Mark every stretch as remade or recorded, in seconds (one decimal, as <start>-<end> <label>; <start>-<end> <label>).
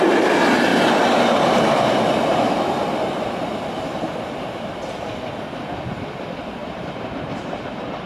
0.0-6.6 recorded; 6.6-8.1 remade